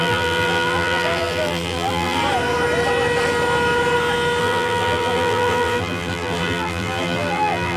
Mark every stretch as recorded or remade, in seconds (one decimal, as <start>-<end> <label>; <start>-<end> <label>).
0.0-2.2 remade; 2.2-4.4 recorded; 4.4-7.8 remade